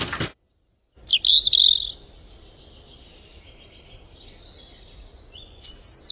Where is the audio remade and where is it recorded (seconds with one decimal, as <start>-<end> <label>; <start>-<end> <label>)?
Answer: 0.0-5.1 recorded; 5.1-6.1 remade